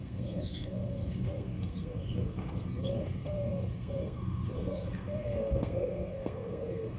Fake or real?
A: fake